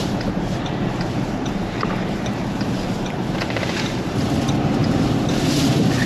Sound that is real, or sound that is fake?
fake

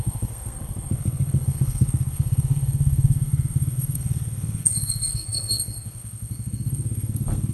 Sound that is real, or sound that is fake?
fake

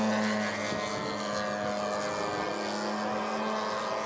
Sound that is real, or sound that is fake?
real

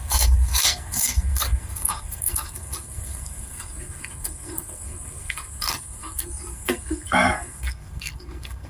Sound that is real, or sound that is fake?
fake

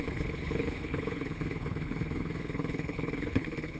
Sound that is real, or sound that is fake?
fake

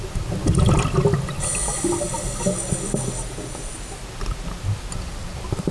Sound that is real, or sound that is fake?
real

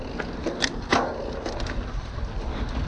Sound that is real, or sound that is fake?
real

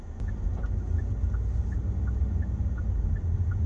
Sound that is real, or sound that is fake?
real